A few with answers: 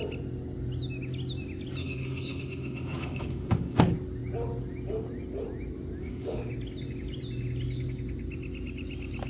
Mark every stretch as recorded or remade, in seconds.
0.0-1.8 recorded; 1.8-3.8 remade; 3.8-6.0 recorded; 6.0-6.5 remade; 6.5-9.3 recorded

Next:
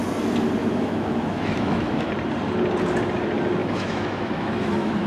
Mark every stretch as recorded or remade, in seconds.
0.0-0.6 recorded; 0.6-2.1 remade; 2.1-3.6 recorded; 3.6-5.1 remade

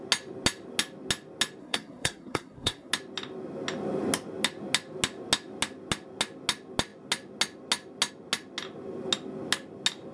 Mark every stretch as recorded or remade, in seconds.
0.0-1.6 recorded; 1.6-2.9 remade; 2.9-10.1 recorded

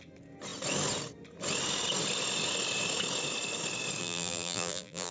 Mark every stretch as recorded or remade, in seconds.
0.0-4.0 recorded; 4.0-5.1 remade

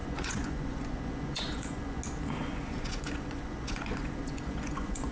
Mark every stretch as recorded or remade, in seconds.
0.0-2.0 remade; 2.0-2.4 recorded; 2.4-5.1 remade